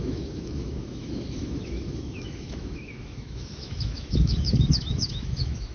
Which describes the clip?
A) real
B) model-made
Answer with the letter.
B